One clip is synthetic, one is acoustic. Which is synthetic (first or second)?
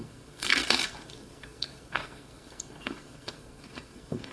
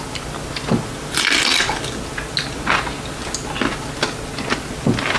first